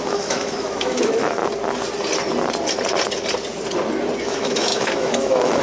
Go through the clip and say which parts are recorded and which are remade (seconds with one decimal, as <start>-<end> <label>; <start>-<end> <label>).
0.0-1.4 remade; 1.4-4.2 recorded; 4.2-5.6 remade